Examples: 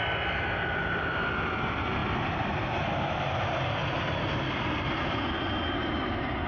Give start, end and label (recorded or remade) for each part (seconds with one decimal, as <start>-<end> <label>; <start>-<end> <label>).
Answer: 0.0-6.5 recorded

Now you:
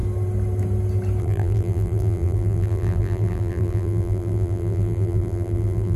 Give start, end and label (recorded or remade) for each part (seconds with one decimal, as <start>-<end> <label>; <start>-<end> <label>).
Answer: 0.0-1.2 recorded; 1.2-6.0 remade

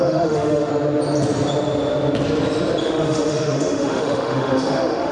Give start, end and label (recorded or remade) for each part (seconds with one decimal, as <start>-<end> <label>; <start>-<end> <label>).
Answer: 0.0-0.7 remade; 0.7-2.8 recorded; 2.8-5.1 remade

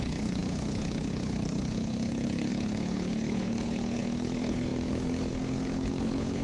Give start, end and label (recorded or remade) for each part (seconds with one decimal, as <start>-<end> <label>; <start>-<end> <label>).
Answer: 0.0-6.4 remade

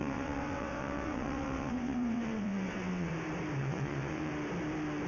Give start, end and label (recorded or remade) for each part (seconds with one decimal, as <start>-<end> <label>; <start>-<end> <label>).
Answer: 0.0-3.1 remade; 3.1-3.6 recorded; 3.6-4.3 remade; 4.3-5.1 recorded

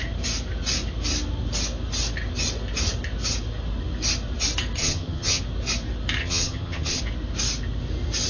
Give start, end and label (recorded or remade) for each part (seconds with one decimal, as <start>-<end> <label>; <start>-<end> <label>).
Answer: 0.0-4.8 recorded; 4.8-5.4 remade; 5.4-6.2 recorded; 6.2-7.0 remade; 7.0-8.3 recorded

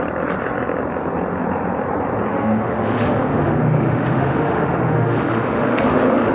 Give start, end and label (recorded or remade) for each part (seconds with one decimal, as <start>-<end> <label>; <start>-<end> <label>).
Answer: 0.0-2.3 recorded; 2.3-6.3 remade